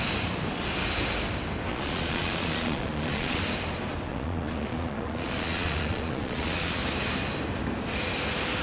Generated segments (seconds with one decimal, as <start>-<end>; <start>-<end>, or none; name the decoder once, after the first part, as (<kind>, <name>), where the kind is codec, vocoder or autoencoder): 1.7-3.4 (vocoder, Vocos); 4.1-6.8

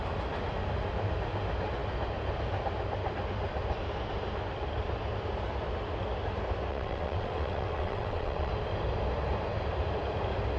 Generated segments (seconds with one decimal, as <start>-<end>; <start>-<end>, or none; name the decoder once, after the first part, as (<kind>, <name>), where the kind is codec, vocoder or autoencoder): 6.7-8.5 (vocoder, WaveNeXt)

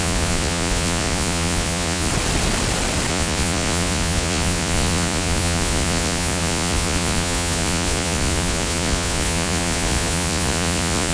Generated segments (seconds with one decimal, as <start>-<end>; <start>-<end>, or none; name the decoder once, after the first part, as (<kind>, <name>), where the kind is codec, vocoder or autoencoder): 0.0-2.1 (vocoder, Vocos); 3.1-11.1

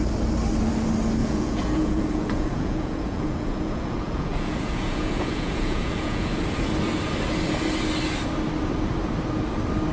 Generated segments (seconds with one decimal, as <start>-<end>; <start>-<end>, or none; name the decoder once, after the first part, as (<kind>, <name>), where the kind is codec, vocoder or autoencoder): 1.2-6.4 (vocoder, Vocos)

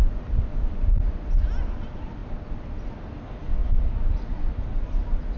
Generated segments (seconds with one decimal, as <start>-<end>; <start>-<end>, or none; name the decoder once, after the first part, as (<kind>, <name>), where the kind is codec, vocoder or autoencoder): 3.6-4.2 (vocoder, BigVGAN v2)